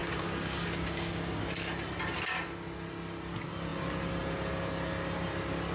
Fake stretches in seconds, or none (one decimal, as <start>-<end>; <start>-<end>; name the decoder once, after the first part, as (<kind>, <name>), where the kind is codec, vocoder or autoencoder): 0.0-1.4 (codec, DAC)